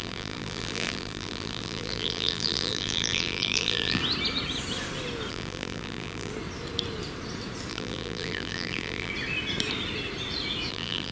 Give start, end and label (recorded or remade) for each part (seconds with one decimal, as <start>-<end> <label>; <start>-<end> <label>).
0.0-4.0 remade; 4.0-5.3 recorded; 5.3-6.3 remade; 6.3-7.7 recorded; 7.7-9.1 remade; 9.1-10.7 recorded; 10.7-11.1 remade

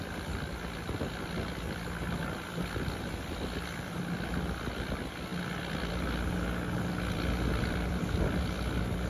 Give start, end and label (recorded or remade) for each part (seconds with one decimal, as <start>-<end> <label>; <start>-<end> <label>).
0.0-9.1 recorded

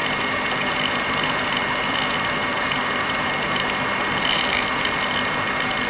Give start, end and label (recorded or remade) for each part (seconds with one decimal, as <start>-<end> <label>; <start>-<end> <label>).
0.0-3.3 remade; 3.3-5.9 recorded

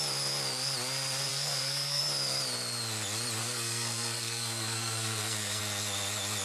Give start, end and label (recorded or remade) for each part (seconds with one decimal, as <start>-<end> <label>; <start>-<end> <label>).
0.0-1.3 recorded; 1.3-2.0 remade; 2.0-3.4 recorded; 3.4-5.6 remade; 5.6-6.4 recorded

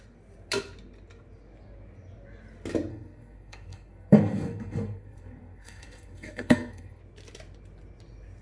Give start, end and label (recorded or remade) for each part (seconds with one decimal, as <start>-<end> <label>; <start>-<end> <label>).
0.0-2.9 recorded; 2.9-7.0 remade; 7.0-8.4 recorded